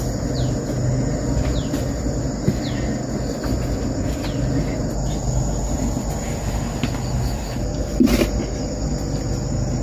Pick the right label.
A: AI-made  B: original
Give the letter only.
B